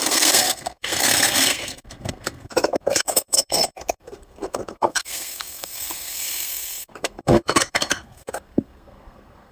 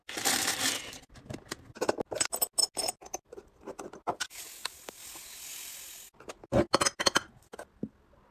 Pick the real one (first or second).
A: second